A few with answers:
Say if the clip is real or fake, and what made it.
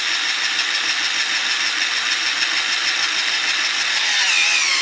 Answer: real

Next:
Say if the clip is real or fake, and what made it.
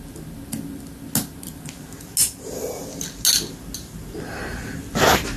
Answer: real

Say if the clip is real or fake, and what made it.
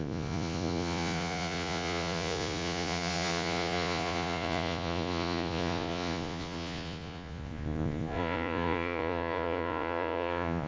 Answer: fake, vocoder, Vocos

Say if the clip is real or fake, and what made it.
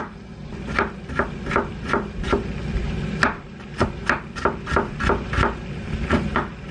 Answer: real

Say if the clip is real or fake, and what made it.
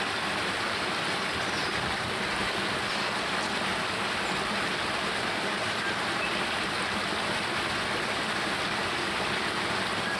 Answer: real